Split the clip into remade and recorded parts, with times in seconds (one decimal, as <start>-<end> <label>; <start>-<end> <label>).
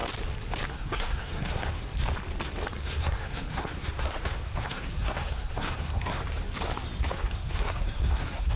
0.0-0.7 recorded; 0.7-1.8 remade; 1.8-2.8 recorded; 2.8-6.2 remade; 6.2-7.1 recorded; 7.1-8.6 remade